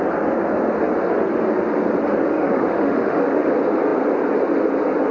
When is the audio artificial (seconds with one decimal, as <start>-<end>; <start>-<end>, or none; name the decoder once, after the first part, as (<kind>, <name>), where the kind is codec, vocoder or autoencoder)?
2.3-3.5 (autoencoder, DAC-VAE)